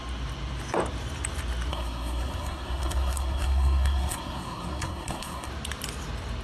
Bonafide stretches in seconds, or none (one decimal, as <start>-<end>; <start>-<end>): 0.0-1.7; 5.5-6.4

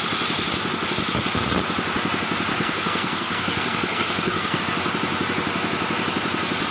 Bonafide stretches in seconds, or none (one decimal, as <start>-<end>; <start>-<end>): 0.0-2.5; 4.6-6.7

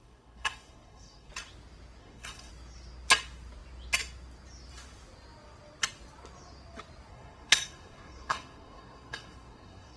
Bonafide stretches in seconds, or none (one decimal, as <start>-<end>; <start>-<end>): 1.3-2.0; 2.5-7.1

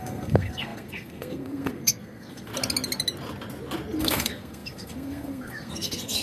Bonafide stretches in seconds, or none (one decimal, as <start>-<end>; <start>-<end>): 2.5-4.0

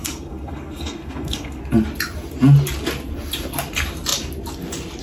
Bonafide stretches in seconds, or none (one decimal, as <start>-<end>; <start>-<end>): 1.6-5.0